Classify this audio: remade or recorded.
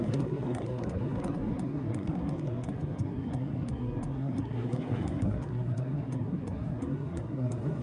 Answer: remade